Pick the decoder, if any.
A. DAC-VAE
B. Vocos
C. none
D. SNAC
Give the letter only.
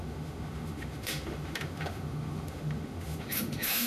A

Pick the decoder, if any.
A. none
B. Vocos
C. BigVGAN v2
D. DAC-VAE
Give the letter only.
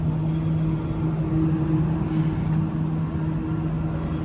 A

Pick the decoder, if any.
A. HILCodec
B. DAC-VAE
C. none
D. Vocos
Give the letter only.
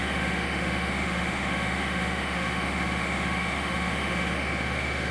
B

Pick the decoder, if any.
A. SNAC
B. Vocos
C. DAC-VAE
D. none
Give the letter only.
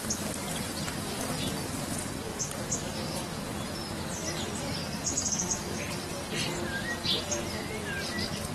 D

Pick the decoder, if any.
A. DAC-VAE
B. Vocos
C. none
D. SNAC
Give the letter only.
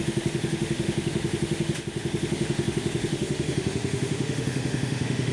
A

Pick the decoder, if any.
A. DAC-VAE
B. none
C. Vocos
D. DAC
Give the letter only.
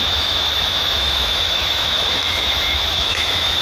A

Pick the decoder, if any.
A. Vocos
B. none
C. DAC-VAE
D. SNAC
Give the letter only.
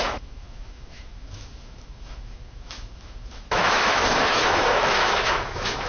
C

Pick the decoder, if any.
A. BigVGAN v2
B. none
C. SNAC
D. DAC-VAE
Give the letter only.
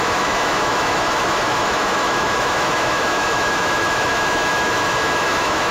D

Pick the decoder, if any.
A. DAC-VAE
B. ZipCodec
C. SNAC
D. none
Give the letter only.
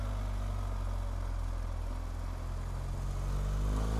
D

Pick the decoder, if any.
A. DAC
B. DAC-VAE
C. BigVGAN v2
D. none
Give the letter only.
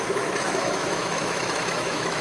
B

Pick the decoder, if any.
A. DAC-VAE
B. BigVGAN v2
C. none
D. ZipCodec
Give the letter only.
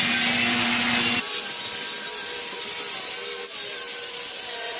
C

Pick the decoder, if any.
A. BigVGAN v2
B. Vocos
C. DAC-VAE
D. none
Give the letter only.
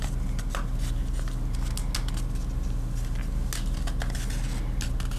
D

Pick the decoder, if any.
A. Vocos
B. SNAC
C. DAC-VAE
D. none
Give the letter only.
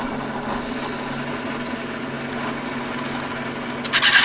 D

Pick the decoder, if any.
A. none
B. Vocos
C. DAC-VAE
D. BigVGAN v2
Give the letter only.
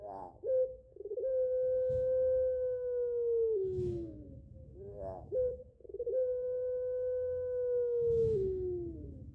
C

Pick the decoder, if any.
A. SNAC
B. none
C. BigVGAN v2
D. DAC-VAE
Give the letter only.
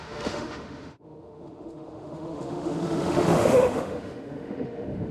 D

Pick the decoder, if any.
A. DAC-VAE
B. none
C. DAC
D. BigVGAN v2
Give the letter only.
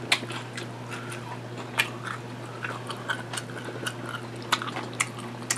B